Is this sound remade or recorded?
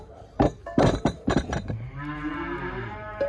remade